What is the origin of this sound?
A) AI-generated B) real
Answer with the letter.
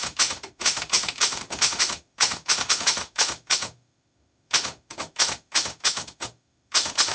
A